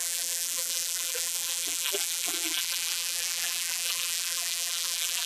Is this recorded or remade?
remade